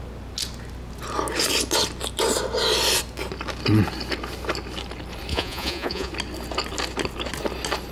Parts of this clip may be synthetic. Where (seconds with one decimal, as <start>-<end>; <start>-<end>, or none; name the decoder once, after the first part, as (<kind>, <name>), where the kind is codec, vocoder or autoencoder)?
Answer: 5.3-6.1 (vocoder, Vocos)